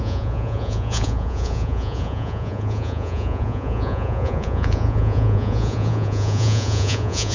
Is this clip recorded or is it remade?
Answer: remade